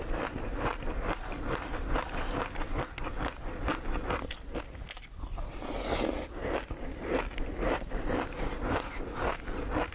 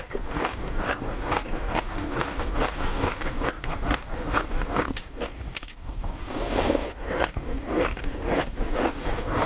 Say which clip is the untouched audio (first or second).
first